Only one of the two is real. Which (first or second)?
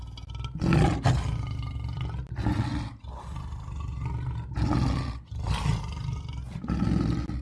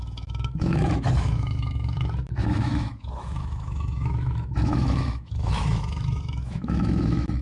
first